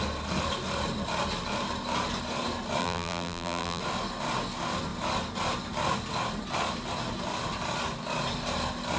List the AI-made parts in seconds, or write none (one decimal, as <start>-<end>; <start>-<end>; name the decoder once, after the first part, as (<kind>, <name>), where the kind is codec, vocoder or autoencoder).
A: 2.8-3.8 (vocoder, BigVGAN v2)